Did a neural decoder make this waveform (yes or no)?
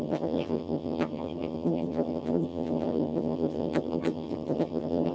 yes